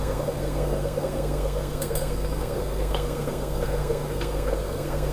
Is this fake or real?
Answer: fake